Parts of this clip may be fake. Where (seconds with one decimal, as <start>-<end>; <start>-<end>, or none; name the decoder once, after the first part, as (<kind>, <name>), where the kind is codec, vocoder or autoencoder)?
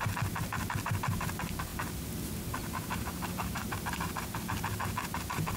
2.6-4.1 (vocoder, BigVGAN v2)